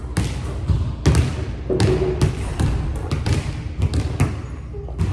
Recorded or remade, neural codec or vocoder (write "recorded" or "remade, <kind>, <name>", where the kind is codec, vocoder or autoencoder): recorded